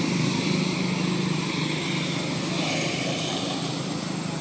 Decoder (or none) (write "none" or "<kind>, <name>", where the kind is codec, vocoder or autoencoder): none